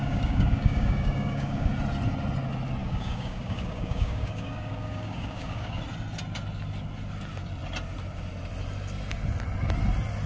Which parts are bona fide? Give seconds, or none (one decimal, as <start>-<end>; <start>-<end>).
1.7-2.8; 5.8-10.3